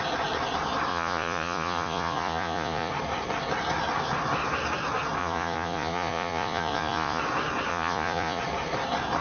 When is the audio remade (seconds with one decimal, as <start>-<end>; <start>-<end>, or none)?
0.9-2.9; 5.2-7.2; 7.7-8.4